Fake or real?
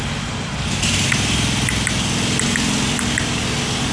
real